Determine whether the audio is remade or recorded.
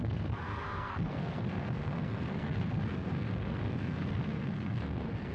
remade